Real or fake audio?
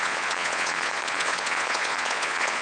fake